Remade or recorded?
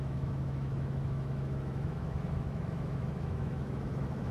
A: remade